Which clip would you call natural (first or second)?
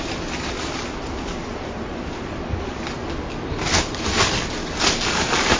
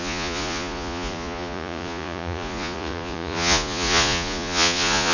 first